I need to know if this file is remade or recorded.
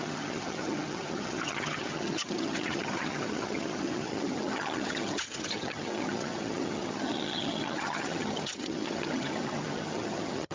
remade